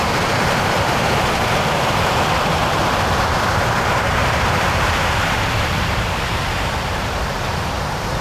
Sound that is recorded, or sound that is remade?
remade